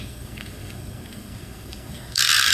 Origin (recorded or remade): remade